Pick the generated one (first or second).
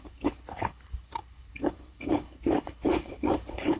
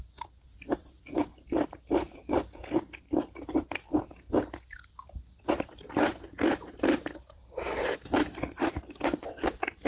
first